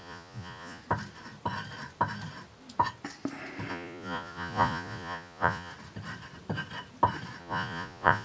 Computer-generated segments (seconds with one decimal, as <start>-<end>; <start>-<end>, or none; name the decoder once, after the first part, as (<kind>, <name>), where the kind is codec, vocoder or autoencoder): 0.0-0.8 (vocoder, Vocos); 3.7-5.7; 7.4-8.2